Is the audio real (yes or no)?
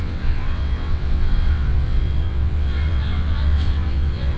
no